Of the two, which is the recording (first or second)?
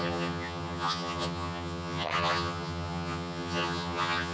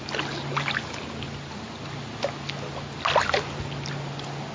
second